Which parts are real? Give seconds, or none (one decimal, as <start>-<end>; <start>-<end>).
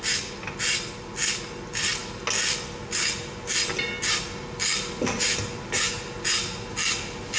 0.0-7.4